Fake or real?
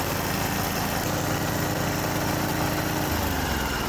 real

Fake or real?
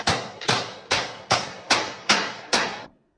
fake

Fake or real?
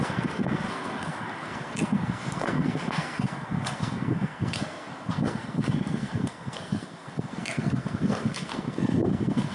fake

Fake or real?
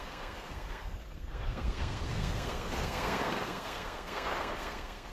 fake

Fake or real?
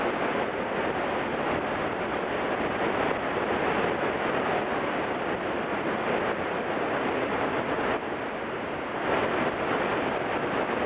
real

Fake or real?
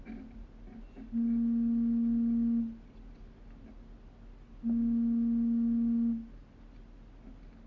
real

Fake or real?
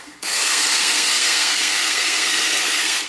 fake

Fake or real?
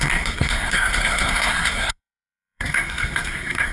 fake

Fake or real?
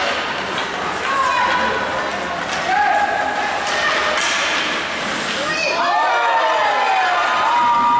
real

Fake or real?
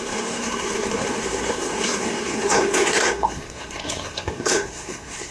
fake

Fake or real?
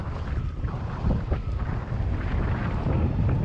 real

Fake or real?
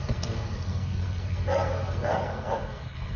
fake